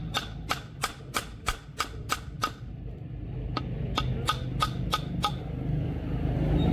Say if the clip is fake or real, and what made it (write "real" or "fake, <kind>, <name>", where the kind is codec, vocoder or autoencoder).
real